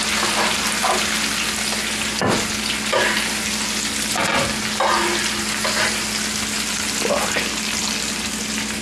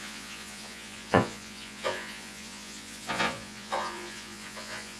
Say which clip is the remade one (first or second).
second